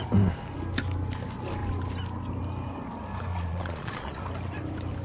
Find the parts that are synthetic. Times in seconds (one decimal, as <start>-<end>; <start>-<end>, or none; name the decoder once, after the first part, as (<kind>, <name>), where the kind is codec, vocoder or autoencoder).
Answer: 3.3-4.2 (vocoder, Vocos)